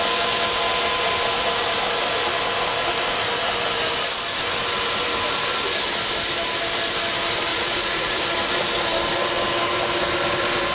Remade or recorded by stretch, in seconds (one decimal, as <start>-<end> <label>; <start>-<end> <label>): 0.0-7.5 recorded; 7.5-8.2 remade; 8.2-10.7 recorded